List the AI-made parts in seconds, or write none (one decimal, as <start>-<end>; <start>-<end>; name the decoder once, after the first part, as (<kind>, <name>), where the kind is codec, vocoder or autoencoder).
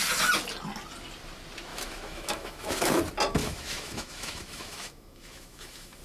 1.7-3.0 (autoencoder, DAC-VAE); 3.4-6.0